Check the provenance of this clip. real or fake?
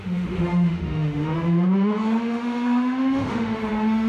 fake